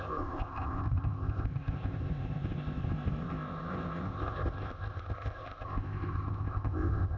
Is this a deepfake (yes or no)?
yes